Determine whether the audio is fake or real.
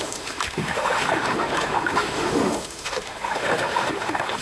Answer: fake